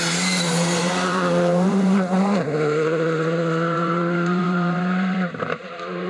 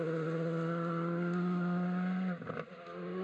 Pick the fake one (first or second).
first